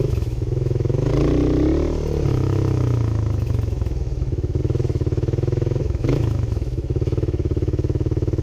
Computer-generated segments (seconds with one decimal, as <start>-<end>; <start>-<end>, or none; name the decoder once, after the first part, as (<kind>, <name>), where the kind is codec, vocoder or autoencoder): 0.0-1.1 (autoencoder, DAC-VAE); 2.3-8.4